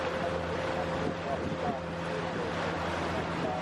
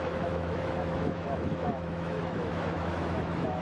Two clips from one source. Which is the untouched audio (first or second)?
first